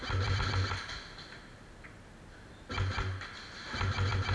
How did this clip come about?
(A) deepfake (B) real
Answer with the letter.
B